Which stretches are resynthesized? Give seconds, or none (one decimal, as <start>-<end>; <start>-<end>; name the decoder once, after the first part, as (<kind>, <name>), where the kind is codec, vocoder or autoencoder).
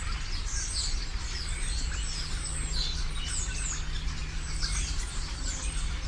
none